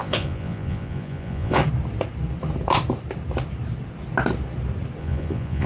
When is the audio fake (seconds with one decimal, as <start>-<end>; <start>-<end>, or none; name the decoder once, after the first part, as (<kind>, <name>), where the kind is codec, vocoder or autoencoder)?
0.0-1.6 (vocoder, Vocos); 5.0-5.7